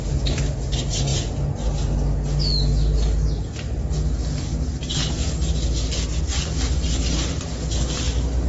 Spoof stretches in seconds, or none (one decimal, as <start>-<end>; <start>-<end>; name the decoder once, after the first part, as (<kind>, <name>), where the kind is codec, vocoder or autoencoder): none

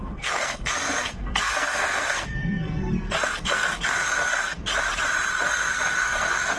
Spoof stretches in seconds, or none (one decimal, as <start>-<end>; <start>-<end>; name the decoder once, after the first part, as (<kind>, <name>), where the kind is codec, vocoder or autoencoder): 0.0-4.7 (codec, SNAC); 5.3-6.6

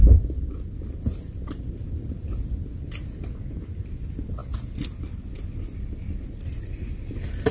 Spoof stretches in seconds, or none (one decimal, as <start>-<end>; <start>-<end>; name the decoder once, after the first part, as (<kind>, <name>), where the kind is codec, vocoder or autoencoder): none

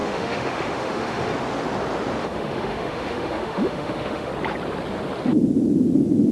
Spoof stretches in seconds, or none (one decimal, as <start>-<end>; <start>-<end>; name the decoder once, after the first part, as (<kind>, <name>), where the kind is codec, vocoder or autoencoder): 0.0-1.3 (autoencoder, DAC-VAE); 2.2-4.3

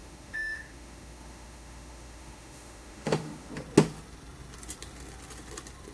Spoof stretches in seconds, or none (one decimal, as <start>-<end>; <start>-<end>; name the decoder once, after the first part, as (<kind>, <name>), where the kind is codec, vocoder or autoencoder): 0.0-3.5 (autoencoder, DAC-VAE)

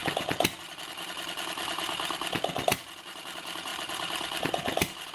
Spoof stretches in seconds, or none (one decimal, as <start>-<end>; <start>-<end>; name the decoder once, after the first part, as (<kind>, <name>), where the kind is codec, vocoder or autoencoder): none

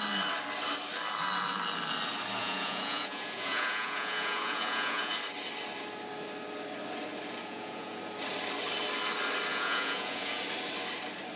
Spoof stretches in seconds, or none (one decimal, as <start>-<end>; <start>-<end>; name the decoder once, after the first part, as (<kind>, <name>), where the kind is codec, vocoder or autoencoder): 2.4-5.1 (vocoder, Vocos); 7.4-8.0; 9.5-10.4

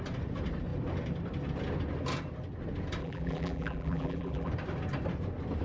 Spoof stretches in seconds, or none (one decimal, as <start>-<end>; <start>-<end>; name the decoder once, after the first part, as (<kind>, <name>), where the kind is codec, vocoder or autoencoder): 3.0-4.5 (vocoder, BigVGAN v2)